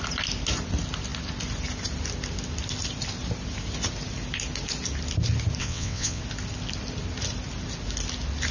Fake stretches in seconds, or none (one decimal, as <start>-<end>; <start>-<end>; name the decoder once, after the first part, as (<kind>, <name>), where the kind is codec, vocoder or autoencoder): 5.6-6.2 (vocoder, WaveNeXt)